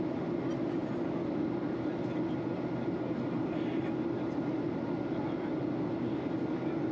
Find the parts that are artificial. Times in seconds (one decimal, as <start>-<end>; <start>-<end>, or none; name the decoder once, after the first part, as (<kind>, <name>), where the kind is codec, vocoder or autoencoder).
none